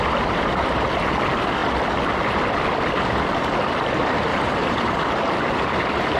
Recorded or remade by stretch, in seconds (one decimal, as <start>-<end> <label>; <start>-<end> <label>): 0.0-4.3 recorded; 4.3-5.0 remade; 5.0-6.2 recorded